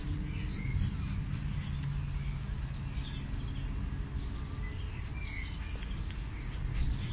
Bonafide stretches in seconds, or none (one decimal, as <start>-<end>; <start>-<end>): 0.0-7.1